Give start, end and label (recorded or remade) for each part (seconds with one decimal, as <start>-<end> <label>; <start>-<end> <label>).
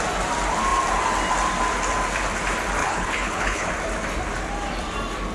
0.0-2.8 recorded; 2.8-3.7 remade; 3.7-5.3 recorded